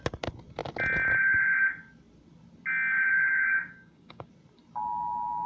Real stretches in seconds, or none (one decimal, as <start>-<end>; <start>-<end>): 0.0-3.3; 4.3-5.5